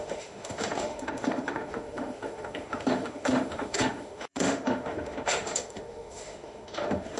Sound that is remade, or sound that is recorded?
remade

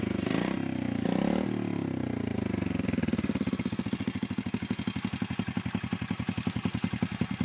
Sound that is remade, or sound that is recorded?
recorded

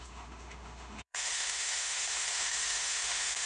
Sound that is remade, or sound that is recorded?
remade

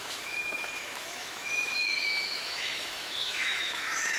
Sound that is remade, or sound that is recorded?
remade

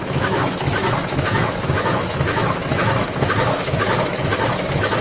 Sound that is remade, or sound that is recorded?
remade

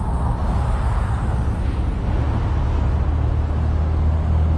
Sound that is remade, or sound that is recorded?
recorded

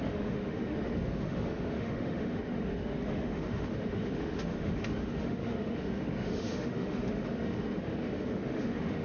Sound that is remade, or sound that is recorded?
remade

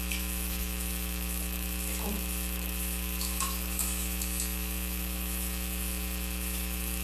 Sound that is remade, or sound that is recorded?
remade